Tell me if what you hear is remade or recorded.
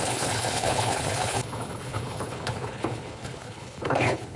remade